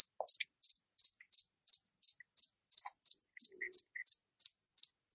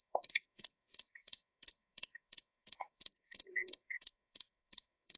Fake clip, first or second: second